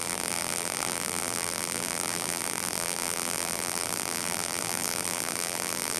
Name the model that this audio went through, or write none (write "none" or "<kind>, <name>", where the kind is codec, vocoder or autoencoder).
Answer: vocoder, BigVGAN v2